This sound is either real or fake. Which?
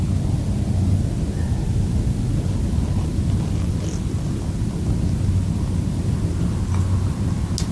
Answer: real